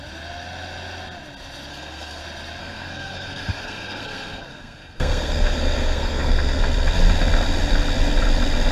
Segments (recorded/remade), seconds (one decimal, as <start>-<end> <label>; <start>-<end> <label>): 0.0-1.7 recorded; 1.7-2.2 remade; 2.2-2.6 recorded; 2.6-6.6 remade; 6.6-8.7 recorded